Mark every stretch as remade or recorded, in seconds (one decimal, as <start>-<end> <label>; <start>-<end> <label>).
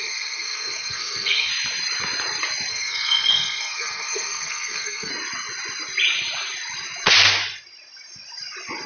0.0-1.5 remade; 1.5-2.7 recorded; 2.7-5.1 remade; 5.1-8.9 recorded